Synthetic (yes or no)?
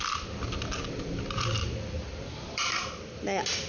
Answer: no